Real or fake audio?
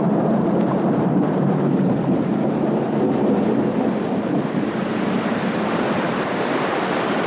fake